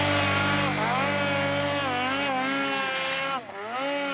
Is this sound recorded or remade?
recorded